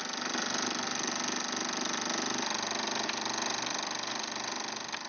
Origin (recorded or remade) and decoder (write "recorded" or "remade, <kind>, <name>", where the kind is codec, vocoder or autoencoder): recorded